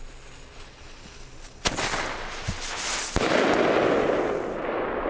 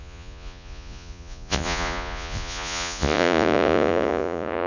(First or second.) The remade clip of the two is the second